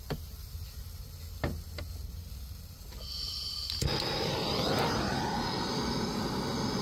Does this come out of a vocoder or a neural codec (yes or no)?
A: no